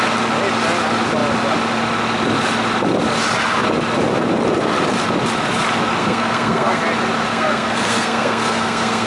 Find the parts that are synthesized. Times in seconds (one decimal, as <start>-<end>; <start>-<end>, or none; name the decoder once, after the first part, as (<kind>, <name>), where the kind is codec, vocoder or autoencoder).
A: 6.0-6.8 (codec, SNAC); 7.3-9.1